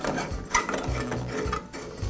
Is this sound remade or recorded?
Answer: recorded